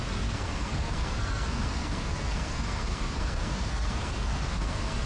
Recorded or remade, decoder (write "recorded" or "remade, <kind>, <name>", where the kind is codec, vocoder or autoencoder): remade, codec, SNAC